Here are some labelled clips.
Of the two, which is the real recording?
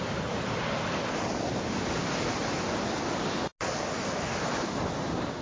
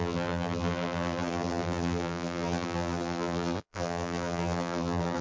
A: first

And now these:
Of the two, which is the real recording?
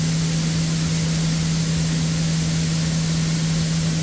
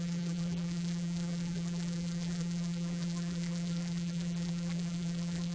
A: first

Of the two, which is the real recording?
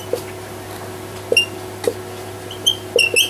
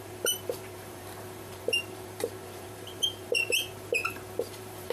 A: first